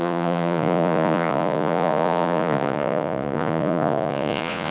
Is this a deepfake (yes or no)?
yes